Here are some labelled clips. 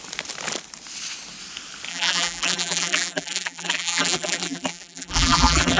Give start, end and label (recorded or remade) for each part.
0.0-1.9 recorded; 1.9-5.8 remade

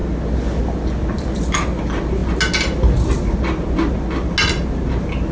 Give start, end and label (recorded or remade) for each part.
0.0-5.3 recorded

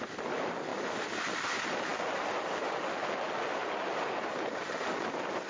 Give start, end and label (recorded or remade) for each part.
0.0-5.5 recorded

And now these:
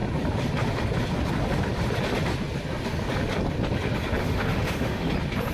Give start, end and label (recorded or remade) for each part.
0.0-4.2 recorded; 4.2-5.1 remade; 5.1-5.5 recorded

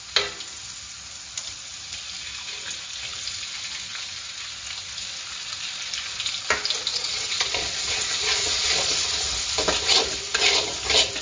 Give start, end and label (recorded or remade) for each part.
0.0-6.9 recorded; 6.9-9.0 remade; 9.0-11.2 recorded

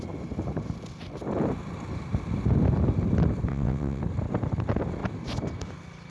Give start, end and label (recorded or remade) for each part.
0.0-3.5 recorded; 3.5-4.0 remade; 4.0-6.1 recorded

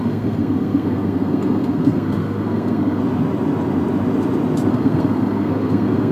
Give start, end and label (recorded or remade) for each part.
0.0-3.0 remade; 3.0-4.7 recorded; 4.7-6.1 remade